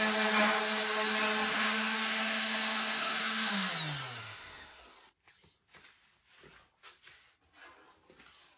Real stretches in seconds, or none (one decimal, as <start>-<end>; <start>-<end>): 0.0-1.5; 3.7-4.2; 4.8-8.6